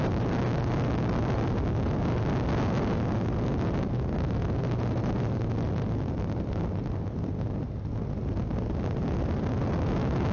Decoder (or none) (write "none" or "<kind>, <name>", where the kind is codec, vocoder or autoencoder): none